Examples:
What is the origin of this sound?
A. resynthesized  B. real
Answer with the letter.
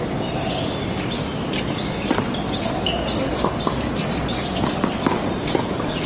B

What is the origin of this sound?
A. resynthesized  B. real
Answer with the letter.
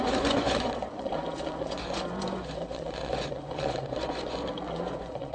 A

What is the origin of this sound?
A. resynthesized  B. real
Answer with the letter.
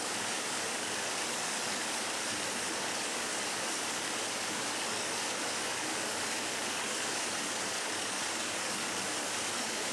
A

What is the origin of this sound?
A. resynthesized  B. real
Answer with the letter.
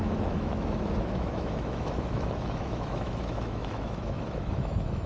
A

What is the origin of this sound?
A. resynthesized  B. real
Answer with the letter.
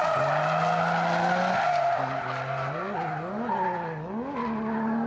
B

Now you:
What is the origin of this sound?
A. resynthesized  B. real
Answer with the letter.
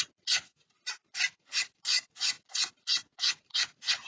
B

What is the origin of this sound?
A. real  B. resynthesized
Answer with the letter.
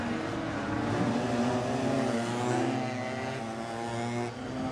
A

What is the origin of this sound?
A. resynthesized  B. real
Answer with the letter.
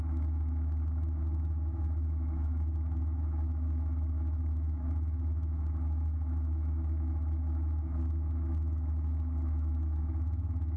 A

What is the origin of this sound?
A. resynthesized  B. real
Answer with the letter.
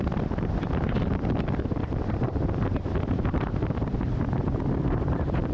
A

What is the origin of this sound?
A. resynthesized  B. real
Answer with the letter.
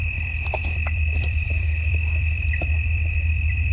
A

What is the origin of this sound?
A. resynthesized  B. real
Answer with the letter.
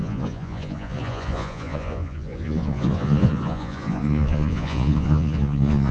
A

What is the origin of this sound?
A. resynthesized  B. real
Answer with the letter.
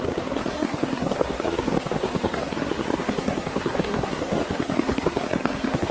A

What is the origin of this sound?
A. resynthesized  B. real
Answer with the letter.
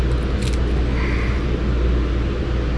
B